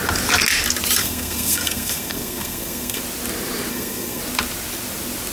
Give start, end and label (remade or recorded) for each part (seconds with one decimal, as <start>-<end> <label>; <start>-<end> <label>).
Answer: 0.0-1.0 recorded; 1.0-3.0 remade; 3.0-3.7 recorded; 3.7-4.2 remade; 4.2-5.3 recorded